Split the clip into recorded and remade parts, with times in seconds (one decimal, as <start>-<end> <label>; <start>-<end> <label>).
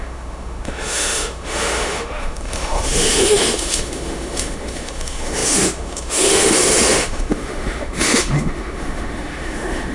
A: 0.0-9.9 remade